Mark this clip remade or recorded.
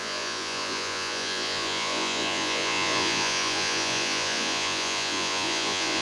remade